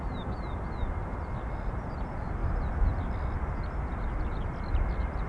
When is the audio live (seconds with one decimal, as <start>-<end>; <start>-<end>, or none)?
0.0-5.3